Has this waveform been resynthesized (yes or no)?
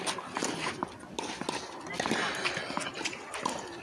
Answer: no